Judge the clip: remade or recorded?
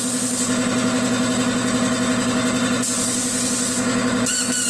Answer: recorded